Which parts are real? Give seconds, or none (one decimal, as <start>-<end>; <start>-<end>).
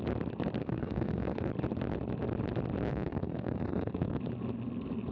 0.0-0.6; 1.5-2.9; 4.2-5.1